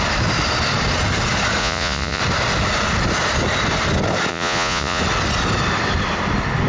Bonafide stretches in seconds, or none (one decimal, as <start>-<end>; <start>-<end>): 0.0-1.6; 2.2-4.3; 5.0-6.7